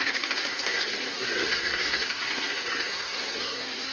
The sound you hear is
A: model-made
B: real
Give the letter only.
A